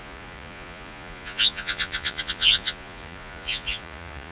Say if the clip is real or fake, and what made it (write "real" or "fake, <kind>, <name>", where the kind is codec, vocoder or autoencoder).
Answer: fake, vocoder, Vocos